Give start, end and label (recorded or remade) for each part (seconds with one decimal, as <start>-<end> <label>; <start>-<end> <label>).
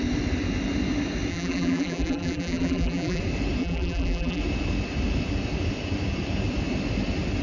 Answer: 0.0-1.3 recorded; 1.3-3.2 remade; 3.2-3.6 recorded; 3.6-4.4 remade; 4.4-7.4 recorded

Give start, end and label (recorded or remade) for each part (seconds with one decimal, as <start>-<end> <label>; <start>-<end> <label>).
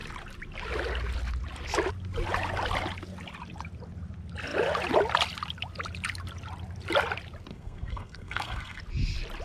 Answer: 0.0-7.5 recorded; 7.5-8.8 remade; 8.8-9.4 recorded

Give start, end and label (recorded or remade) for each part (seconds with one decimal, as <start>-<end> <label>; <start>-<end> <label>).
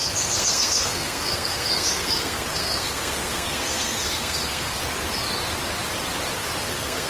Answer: 0.0-4.8 remade; 4.8-6.6 recorded; 6.6-7.1 remade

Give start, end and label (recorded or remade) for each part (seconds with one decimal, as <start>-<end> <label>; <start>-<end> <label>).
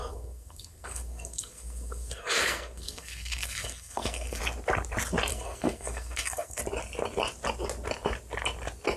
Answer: 0.0-4.4 remade; 4.4-5.3 recorded; 5.3-6.6 remade; 6.6-9.0 recorded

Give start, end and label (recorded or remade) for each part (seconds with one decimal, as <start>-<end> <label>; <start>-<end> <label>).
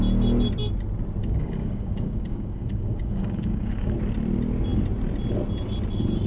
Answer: 0.0-1.2 recorded; 1.2-3.9 remade; 3.9-6.3 recorded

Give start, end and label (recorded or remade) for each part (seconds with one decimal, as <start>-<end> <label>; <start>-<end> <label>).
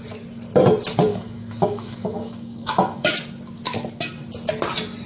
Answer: 0.0-1.1 recorded; 1.1-3.1 remade; 3.1-5.1 recorded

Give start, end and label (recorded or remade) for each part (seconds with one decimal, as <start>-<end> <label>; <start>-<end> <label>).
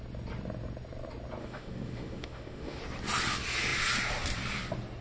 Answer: 0.0-1.4 recorded; 1.4-2.8 remade; 2.8-5.0 recorded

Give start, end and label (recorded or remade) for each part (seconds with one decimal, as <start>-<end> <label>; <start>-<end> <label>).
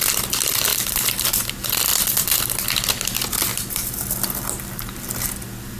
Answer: 0.0-0.7 recorded; 0.7-1.5 remade; 1.5-1.9 recorded; 1.9-2.4 remade; 2.4-3.5 recorded; 3.5-4.0 remade; 4.0-5.8 recorded